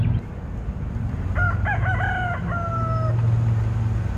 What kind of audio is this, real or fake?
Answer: real